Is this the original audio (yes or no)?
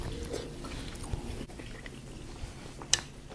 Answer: yes